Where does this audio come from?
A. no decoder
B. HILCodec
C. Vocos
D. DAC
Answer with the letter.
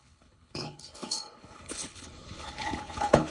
B